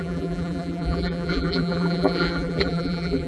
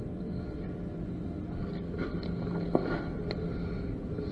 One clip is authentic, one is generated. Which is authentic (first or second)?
second